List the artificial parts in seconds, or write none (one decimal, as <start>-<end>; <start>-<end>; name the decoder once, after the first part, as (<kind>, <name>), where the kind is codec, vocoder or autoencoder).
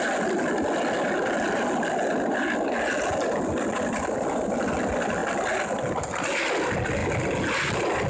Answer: none